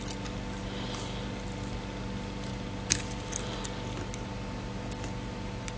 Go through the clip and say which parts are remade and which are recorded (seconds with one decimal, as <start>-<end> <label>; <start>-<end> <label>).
0.0-5.8 recorded